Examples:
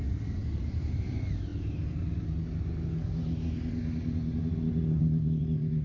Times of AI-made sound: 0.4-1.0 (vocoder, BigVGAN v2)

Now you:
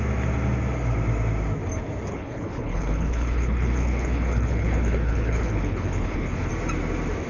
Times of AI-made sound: 2.1-6.5 (codec, HILCodec)

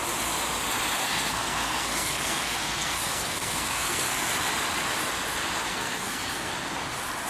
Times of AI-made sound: 1.0-4.3 (codec, SNAC); 5.7-6.5

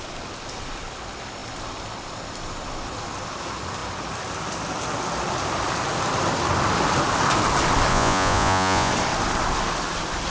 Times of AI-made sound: 7.9-8.9 (vocoder, Vocos)

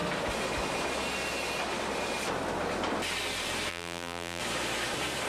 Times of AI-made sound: 3.7-4.4 (vocoder, BigVGAN v2)

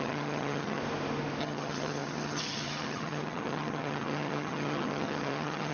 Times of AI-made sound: 0.0-0.8 (vocoder, HiFi-GAN); 1.4-5.7

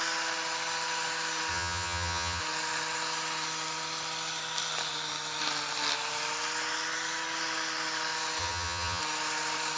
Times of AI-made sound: 1.5-2.4 (vocoder, HiFi-GAN); 8.4-9.0

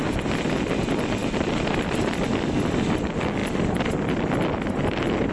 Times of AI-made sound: none